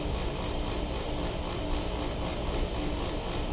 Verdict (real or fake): real